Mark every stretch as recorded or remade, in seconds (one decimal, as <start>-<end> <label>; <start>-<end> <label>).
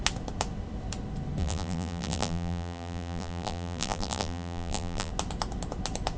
0.0-1.4 recorded; 1.4-5.1 remade; 5.1-6.2 recorded